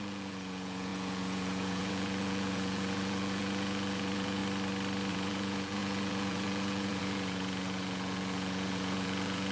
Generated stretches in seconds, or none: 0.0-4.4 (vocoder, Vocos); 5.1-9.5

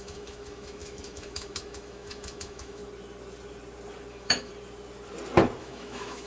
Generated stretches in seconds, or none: 0.0-2.8 (autoencoder, DAC-VAE); 4.1-4.5; 5.6-6.3

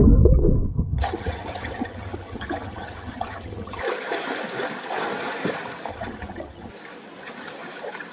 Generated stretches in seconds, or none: 0.7-3.8 (vocoder, HiFi-GAN); 5.9-6.7

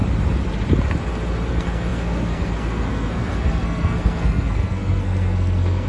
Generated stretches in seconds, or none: 1.5-5.9 (codec, SNAC)

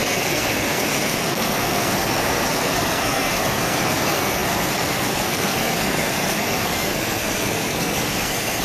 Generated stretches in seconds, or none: 0.0-8.6 (codec, SNAC)